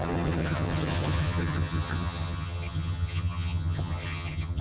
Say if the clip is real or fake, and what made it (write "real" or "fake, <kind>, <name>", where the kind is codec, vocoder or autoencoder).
fake, vocoder, HiFi-GAN